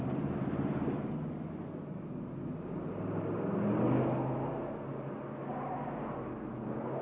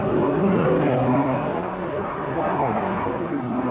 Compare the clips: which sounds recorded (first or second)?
first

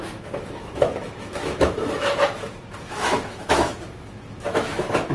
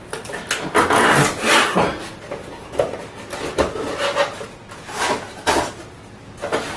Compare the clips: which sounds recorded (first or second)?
second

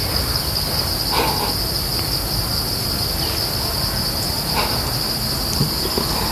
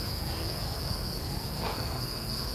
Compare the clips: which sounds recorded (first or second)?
first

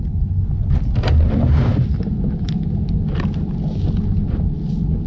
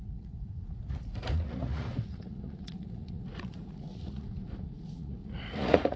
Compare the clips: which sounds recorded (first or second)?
first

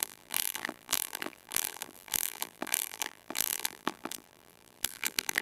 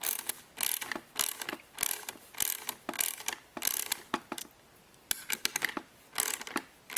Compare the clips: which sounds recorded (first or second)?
second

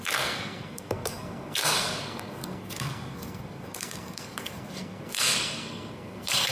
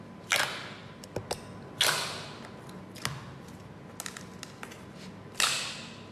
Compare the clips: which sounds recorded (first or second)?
second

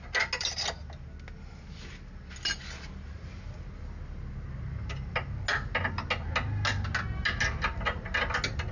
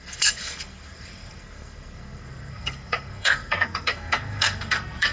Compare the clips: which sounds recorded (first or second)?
first